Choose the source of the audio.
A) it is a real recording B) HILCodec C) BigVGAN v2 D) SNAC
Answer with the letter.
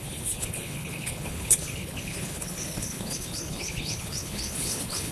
B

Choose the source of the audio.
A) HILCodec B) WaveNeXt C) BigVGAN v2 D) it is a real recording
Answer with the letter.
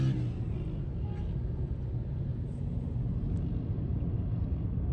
D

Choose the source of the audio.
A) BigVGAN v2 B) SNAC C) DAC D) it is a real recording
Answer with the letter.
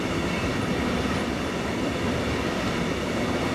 D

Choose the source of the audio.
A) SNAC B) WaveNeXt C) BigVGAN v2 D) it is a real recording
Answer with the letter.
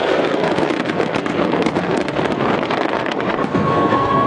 A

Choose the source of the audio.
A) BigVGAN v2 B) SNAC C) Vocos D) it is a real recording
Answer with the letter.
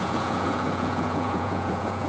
C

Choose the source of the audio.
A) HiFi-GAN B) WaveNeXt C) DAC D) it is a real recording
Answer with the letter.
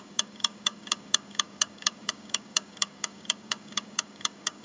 C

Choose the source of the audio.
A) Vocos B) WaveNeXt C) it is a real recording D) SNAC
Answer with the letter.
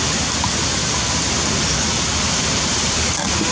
C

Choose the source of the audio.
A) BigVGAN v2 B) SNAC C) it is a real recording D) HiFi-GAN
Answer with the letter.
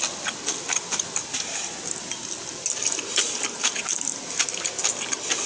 C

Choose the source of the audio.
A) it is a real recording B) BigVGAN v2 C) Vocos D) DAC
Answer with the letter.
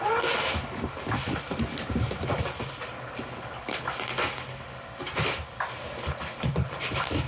A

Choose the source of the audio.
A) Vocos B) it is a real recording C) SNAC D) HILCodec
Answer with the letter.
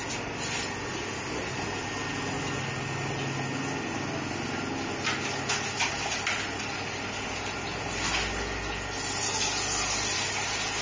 B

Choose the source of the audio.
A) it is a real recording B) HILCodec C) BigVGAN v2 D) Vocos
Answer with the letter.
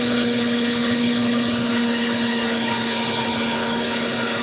B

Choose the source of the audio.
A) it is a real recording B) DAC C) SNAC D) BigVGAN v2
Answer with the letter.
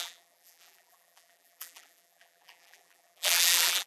D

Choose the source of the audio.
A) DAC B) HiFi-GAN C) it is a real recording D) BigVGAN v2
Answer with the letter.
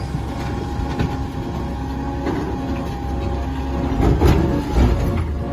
C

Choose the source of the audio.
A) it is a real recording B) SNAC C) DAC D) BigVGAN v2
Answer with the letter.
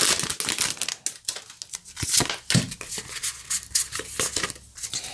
A